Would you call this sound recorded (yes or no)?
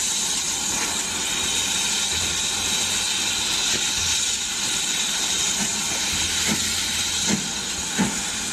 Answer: yes